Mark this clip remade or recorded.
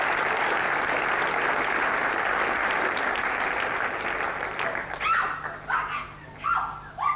recorded